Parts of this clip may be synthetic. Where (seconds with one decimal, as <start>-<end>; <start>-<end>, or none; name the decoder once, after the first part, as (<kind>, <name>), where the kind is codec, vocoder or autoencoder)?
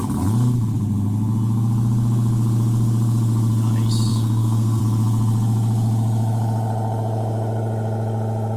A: 4.1-4.8 (codec, SNAC)